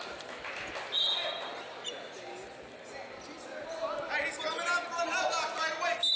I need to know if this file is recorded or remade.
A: recorded